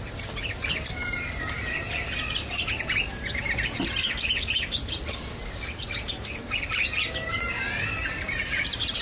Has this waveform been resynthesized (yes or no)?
no